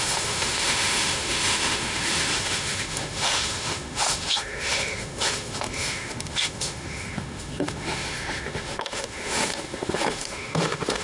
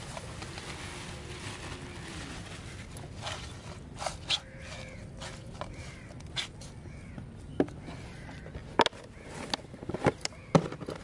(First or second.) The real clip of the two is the second